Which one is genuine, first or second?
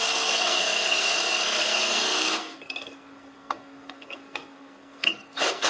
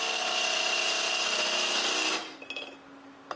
second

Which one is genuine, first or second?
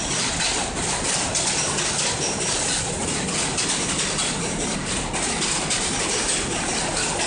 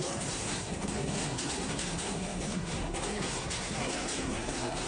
first